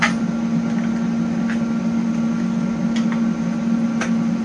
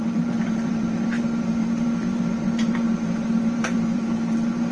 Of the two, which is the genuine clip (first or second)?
first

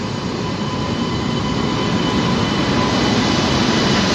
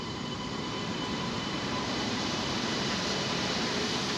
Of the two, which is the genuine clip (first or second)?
first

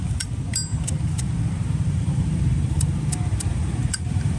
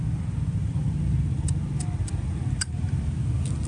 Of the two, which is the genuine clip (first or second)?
second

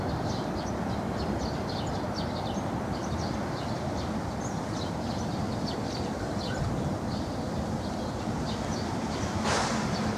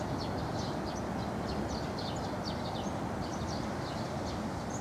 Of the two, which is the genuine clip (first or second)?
second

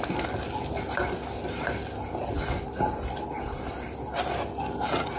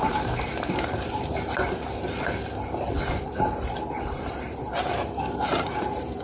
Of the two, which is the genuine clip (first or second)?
first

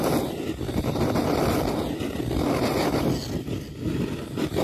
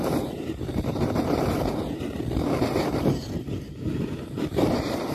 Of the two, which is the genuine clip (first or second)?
first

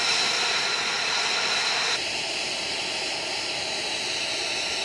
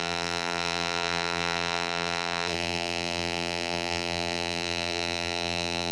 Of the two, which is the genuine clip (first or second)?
first